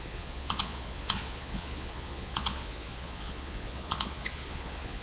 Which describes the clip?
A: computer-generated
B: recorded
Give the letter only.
A